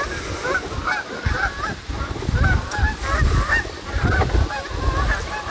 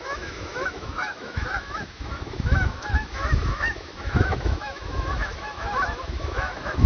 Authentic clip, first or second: first